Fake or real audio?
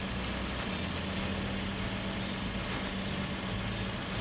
real